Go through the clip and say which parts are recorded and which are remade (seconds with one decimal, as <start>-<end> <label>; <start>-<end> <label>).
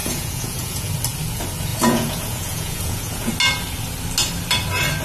0.0-0.9 remade; 0.9-1.7 recorded; 1.7-3.3 remade; 3.3-5.0 recorded